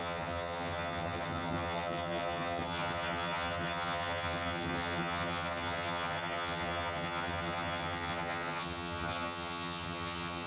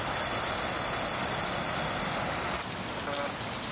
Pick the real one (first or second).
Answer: second